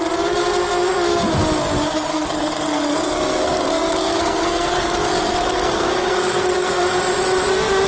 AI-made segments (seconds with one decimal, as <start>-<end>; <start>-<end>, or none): 2.1-6.8